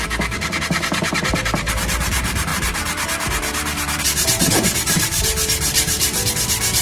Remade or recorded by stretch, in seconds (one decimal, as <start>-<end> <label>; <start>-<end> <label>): 0.0-6.8 remade